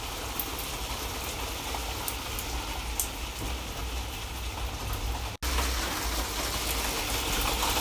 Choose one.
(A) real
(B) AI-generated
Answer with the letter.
A